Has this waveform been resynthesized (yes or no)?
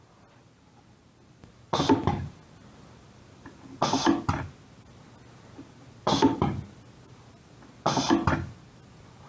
no